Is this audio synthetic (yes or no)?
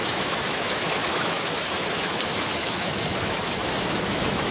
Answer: yes